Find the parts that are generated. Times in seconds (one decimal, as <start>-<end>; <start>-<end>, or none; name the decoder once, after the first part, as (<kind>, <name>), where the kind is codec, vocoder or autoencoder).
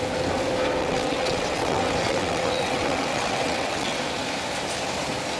0.8-4.0 (vocoder, WaveNeXt)